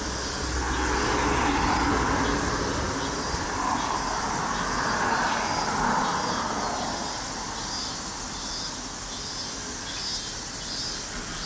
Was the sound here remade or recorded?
recorded